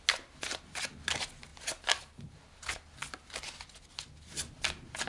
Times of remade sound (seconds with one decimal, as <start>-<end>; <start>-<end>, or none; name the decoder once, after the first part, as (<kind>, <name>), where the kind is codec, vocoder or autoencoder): none